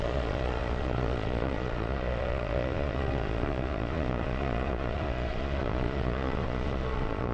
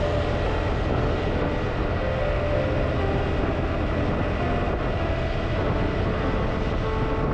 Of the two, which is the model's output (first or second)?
first